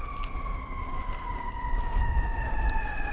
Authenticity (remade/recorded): recorded